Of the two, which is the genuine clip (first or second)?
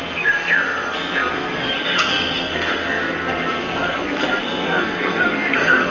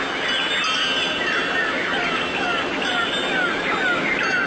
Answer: second